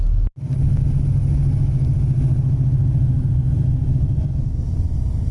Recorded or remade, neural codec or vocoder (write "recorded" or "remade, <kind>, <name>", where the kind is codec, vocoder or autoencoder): recorded